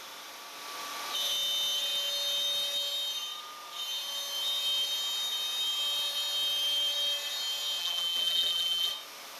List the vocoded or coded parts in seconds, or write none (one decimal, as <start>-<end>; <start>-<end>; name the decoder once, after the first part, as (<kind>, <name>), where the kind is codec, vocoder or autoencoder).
7.8-8.9 (vocoder, BigVGAN v2)

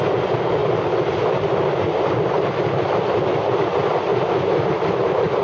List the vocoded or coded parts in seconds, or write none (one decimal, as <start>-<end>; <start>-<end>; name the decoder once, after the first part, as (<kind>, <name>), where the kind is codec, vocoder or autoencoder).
4.1-5.4 (vocoder, BigVGAN v2)